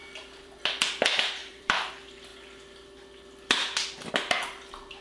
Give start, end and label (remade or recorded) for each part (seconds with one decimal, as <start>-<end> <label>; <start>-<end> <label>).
0.0-0.6 remade; 0.6-1.4 recorded; 1.4-1.9 remade; 1.9-5.0 recorded